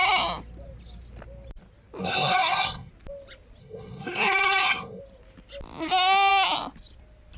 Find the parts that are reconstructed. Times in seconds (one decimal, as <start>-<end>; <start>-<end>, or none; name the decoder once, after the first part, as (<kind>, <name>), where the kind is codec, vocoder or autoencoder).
2.0-2.9 (codec, SNAC); 3.6-5.0